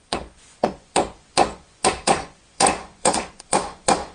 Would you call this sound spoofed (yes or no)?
yes